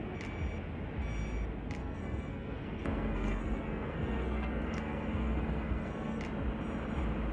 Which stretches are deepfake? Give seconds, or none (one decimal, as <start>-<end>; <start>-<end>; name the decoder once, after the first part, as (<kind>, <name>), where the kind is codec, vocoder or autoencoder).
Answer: 1.8-6.2 (codec, SNAC)